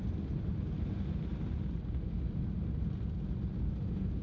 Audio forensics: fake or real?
real